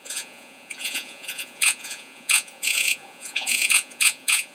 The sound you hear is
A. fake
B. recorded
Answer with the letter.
A